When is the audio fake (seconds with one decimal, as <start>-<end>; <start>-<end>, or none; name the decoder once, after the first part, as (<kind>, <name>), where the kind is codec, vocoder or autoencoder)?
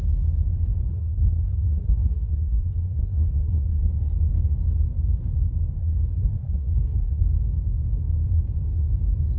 0.9-3.9 (codec, SNAC); 5.8-7.2